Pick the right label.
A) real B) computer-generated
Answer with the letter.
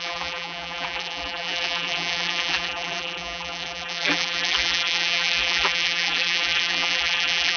B